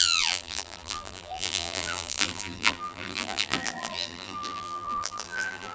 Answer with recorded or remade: remade